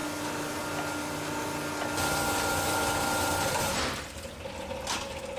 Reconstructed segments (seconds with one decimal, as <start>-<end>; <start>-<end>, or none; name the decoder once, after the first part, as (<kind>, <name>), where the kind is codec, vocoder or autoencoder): none